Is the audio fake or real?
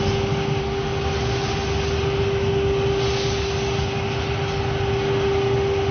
real